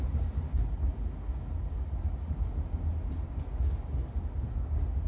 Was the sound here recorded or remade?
recorded